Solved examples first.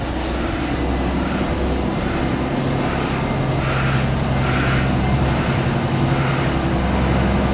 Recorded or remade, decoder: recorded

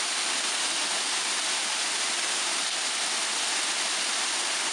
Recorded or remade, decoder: recorded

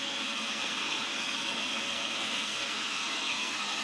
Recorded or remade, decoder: remade, codec, SNAC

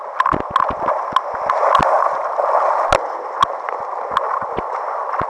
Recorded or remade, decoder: recorded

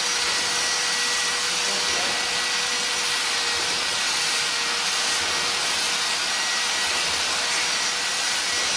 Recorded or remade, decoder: recorded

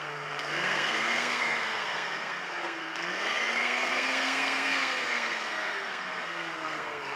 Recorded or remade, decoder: remade, codec, SNAC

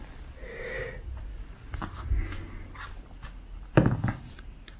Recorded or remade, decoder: recorded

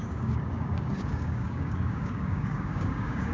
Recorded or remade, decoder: remade, codec, DAC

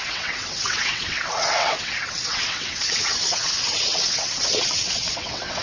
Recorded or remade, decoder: remade, vocoder, WaveNeXt